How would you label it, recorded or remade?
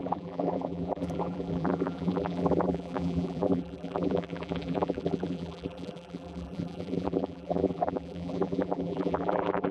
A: remade